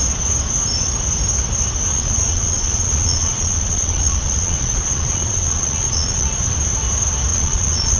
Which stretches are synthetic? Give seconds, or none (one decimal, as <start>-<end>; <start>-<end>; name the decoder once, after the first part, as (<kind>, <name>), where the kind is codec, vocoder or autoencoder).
1.9-6.3 (vocoder, Vocos); 7.3-8.0